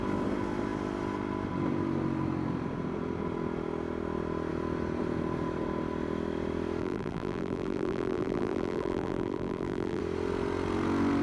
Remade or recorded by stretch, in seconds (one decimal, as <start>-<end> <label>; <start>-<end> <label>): 0.0-6.8 recorded; 6.8-10.0 remade; 10.0-11.2 recorded